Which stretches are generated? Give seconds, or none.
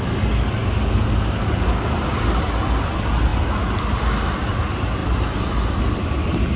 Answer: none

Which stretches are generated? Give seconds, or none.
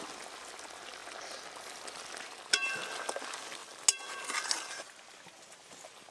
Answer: none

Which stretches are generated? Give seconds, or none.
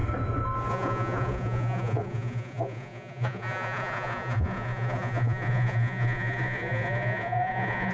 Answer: 0.7-7.9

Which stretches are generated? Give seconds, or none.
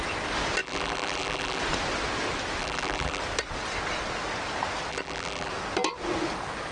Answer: 0.6-1.6; 2.6-3.2; 4.9-5.5